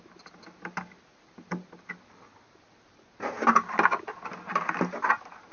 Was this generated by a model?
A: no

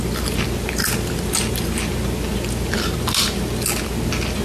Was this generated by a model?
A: no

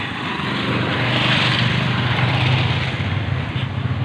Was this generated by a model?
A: no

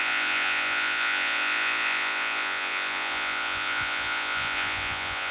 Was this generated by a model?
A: yes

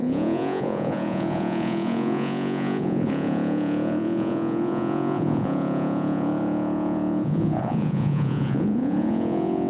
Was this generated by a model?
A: yes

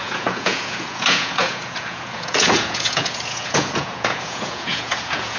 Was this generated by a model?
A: yes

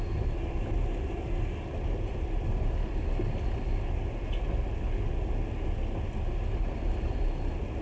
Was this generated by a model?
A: no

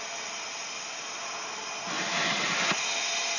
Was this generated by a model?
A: no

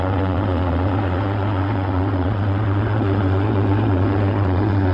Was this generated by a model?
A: yes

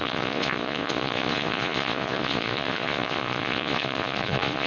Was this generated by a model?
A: yes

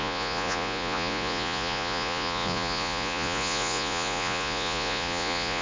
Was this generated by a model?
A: yes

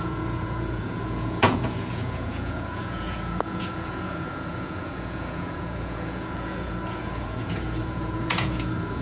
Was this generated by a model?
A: yes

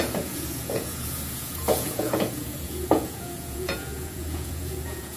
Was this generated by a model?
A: yes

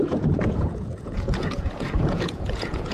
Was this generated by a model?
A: yes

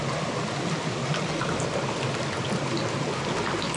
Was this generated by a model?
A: no